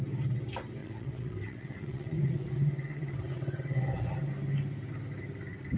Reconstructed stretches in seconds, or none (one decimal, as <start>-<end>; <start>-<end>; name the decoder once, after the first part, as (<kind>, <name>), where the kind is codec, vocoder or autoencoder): 0.8-4.3 (vocoder, WaveNeXt)